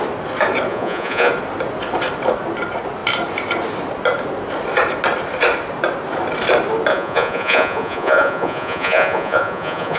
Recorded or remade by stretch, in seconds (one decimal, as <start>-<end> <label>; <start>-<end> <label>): 0.0-0.7 recorded; 0.7-1.3 remade; 1.3-6.9 recorded; 6.9-10.0 remade